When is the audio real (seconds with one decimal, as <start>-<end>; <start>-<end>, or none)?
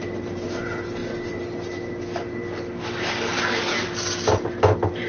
0.0-5.1